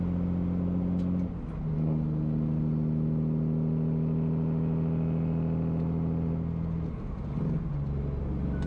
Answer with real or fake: real